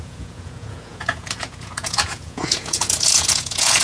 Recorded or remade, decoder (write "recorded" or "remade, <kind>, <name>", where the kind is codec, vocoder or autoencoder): remade, vocoder, Vocos